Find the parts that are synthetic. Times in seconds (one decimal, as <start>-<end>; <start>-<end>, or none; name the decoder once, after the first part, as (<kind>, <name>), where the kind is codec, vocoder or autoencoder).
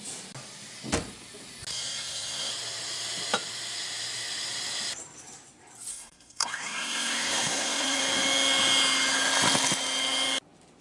1.7-2.5 (codec, SNAC); 5.9-8.0